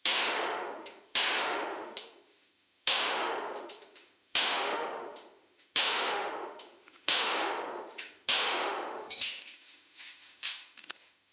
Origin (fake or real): fake